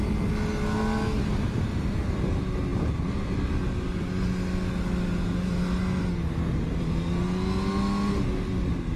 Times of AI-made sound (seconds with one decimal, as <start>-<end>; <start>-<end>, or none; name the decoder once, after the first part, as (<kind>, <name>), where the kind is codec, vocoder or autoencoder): none